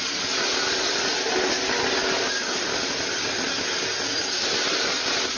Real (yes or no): yes